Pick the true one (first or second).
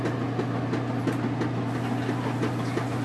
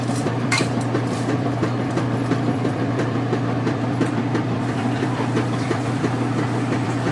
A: first